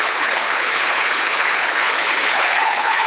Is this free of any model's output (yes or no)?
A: no